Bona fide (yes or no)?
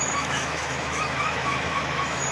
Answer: no